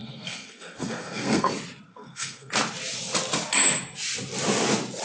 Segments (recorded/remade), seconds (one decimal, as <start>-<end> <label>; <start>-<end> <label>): 0.0-1.5 remade; 1.5-1.9 recorded; 1.9-2.5 remade; 2.5-5.0 recorded